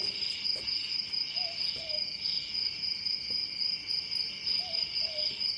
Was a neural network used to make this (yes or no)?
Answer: no